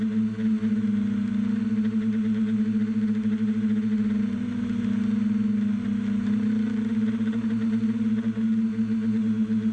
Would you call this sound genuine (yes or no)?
yes